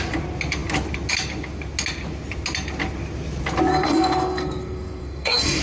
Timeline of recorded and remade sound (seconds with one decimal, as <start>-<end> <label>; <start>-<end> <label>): 0.0-3.7 recorded; 3.7-5.6 remade